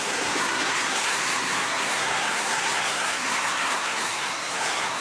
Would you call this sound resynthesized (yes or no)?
yes